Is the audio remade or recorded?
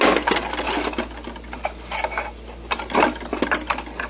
recorded